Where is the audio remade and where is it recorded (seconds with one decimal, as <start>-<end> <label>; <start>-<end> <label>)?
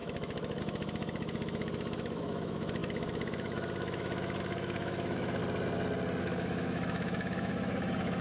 0.0-5.4 remade; 5.4-6.2 recorded; 6.2-8.2 remade